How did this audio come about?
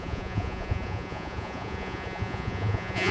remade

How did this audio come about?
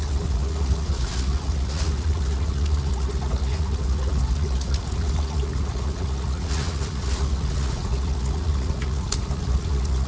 remade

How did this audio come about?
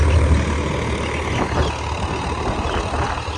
recorded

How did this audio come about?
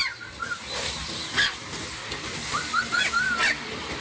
recorded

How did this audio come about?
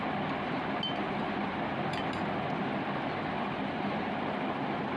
recorded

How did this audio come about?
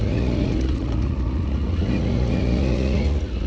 remade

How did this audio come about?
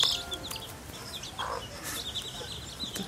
recorded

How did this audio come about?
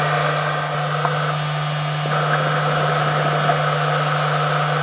recorded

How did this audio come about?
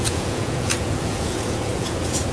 remade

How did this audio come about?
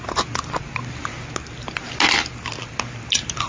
recorded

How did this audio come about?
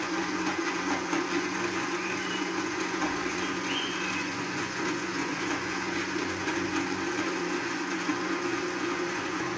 remade